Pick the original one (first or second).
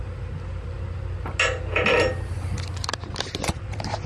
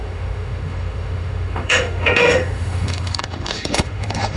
first